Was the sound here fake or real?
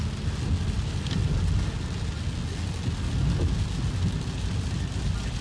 real